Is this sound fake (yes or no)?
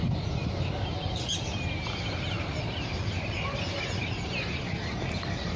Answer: no